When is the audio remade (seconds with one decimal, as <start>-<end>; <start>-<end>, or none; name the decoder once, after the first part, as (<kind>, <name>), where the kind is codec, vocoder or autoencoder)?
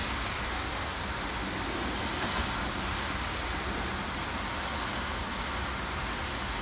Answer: none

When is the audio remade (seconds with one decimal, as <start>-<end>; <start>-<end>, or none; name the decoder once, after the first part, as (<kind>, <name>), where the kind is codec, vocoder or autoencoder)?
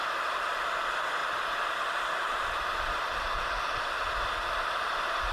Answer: 1.2-3.5 (vocoder, BigVGAN v2)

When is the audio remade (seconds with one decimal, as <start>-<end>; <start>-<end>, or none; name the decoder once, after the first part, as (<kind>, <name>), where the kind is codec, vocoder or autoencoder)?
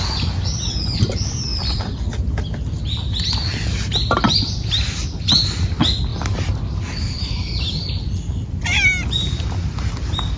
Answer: none